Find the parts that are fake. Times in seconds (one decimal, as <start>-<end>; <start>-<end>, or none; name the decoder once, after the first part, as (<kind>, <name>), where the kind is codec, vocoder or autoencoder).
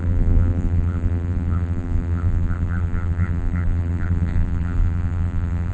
0.0-5.7 (vocoder, BigVGAN v2)